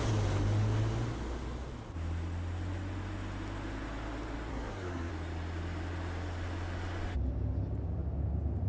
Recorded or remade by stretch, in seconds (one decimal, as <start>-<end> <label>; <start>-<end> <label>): 0.0-4.5 recorded; 4.5-5.1 remade; 5.1-8.7 recorded